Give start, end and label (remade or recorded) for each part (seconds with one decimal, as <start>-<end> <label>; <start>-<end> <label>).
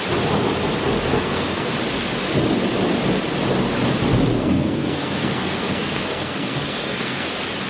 0.0-1.1 recorded; 1.1-1.7 remade; 1.7-4.3 recorded; 4.3-7.3 remade; 7.3-7.7 recorded